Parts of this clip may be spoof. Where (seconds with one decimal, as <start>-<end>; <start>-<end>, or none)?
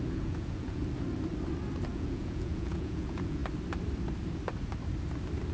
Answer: 0.0-0.8; 1.9-3.4